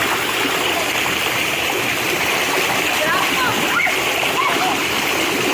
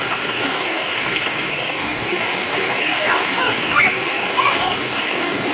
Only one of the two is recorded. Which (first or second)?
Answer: first